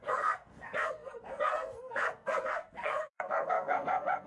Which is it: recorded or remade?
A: remade